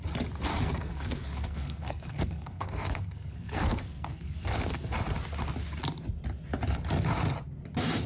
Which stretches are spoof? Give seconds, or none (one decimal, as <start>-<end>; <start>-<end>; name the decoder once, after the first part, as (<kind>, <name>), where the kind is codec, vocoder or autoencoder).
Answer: 0.5-4.9 (codec, SNAC)